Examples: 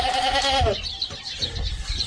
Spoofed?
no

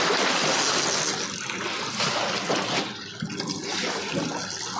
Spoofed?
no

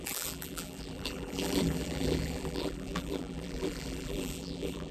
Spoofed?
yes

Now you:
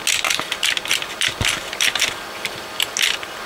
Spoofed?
no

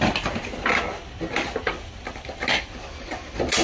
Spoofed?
no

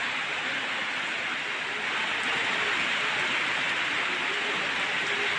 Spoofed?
no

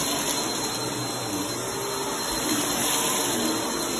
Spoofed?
no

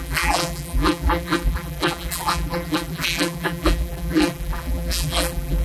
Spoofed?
yes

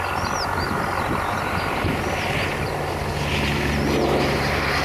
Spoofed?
no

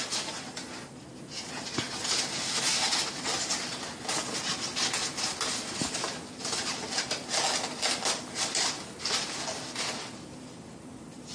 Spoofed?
no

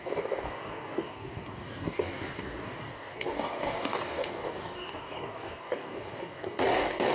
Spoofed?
yes